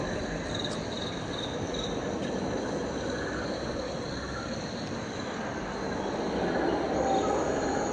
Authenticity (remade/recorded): recorded